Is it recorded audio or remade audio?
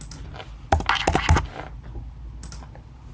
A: recorded